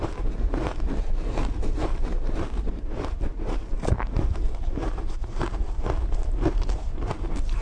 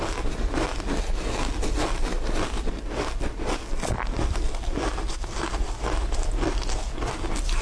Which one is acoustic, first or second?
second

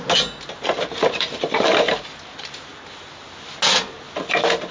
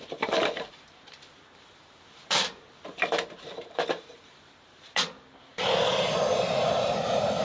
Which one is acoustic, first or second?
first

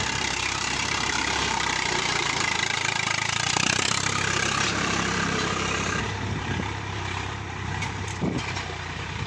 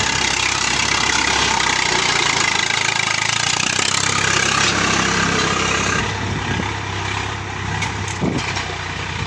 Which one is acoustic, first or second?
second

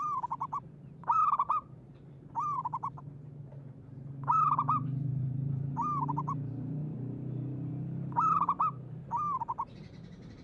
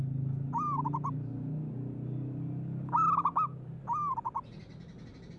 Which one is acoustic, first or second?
second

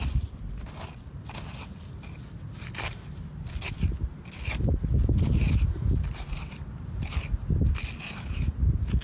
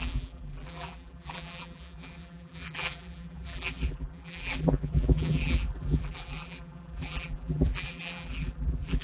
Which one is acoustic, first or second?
first